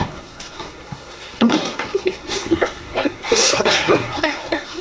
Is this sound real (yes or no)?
no